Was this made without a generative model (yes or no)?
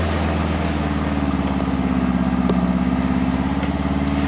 yes